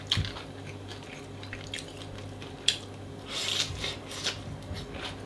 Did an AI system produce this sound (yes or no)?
no